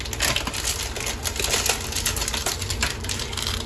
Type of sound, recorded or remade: recorded